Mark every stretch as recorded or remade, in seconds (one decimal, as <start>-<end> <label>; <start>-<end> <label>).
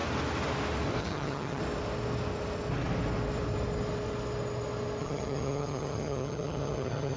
0.0-1.0 recorded; 1.0-1.6 remade; 1.6-5.0 recorded; 5.0-7.2 remade